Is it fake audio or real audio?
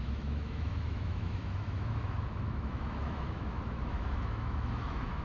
fake